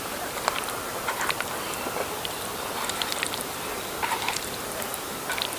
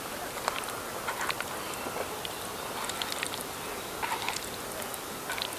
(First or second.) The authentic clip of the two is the second